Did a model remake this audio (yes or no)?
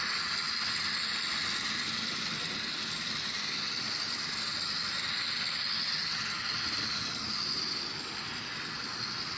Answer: no